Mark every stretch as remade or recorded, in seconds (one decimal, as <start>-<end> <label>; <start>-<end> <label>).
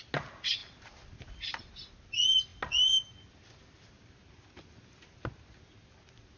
0.0-6.4 recorded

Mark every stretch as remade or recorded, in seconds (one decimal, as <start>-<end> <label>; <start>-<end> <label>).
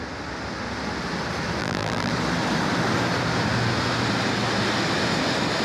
0.0-1.6 recorded; 1.6-2.1 remade; 2.1-5.6 recorded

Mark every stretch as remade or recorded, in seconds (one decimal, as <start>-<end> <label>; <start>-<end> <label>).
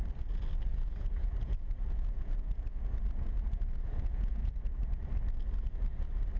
0.0-0.7 recorded; 0.7-4.5 remade; 4.5-6.4 recorded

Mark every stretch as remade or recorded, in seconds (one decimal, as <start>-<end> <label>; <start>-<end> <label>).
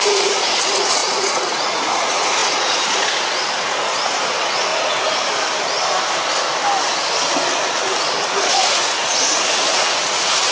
0.0-4.7 remade; 4.7-8.5 recorded; 8.5-10.5 remade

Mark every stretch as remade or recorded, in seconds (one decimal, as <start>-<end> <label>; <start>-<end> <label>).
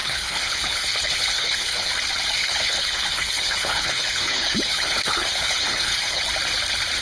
0.0-1.9 remade; 1.9-2.4 recorded; 2.4-6.2 remade; 6.2-7.0 recorded